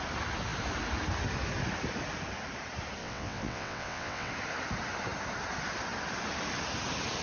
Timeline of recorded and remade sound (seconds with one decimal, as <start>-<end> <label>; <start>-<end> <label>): 0.0-3.0 recorded; 3.0-4.3 remade; 4.3-7.2 recorded